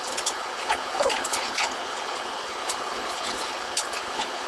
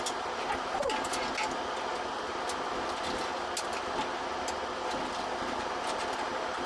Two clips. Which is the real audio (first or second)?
second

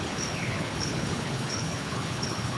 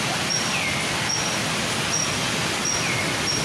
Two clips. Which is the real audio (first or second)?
second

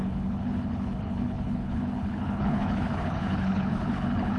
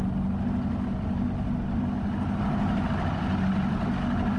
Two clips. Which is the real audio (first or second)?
second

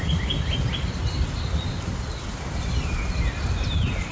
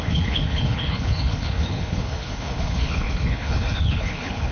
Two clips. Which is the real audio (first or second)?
first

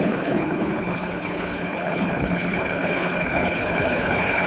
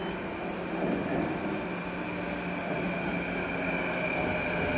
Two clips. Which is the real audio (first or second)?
second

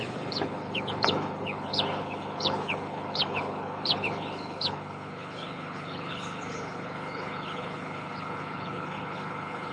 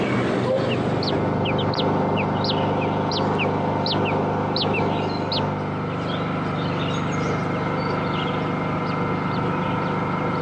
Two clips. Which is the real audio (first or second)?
second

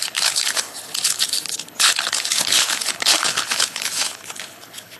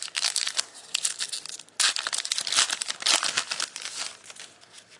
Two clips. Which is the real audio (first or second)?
second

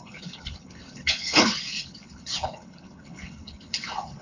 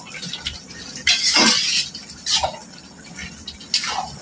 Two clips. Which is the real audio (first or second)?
second